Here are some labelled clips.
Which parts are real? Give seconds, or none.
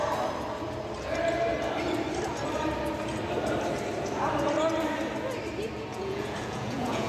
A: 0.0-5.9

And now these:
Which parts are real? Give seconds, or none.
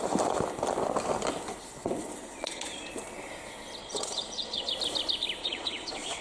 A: 0.0-2.2; 2.9-3.8; 4.7-5.4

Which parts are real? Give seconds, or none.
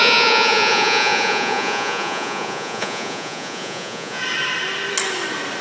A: 4.2-5.6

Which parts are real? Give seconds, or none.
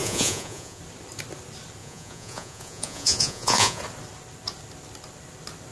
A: 0.8-1.8; 3.8-5.7